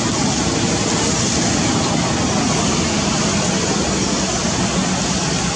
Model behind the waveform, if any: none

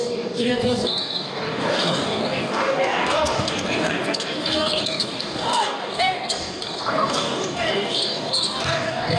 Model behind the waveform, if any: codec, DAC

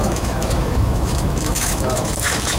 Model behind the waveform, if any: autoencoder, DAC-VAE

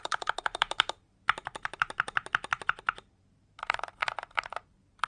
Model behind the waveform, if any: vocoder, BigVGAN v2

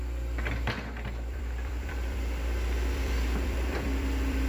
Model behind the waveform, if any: vocoder, BigVGAN v2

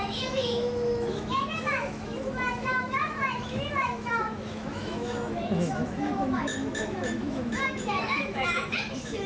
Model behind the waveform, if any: autoencoder, DAC-VAE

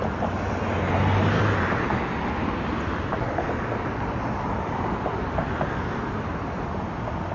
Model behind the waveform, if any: none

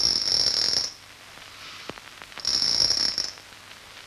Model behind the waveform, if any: none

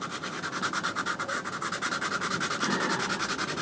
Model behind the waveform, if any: none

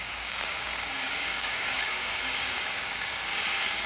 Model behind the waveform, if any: codec, DAC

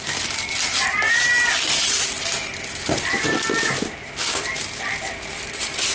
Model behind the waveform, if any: none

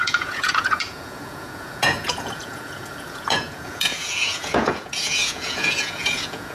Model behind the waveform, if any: vocoder, Vocos